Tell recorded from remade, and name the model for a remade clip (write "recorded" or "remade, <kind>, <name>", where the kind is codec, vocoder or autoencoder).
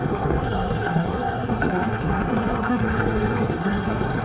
remade, codec, SNAC